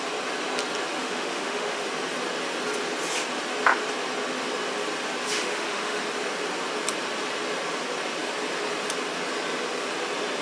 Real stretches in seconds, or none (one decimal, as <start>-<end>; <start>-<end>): 0.0-1.0; 1.8-5.2; 6.0-10.4